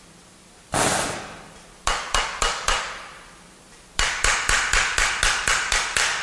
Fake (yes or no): no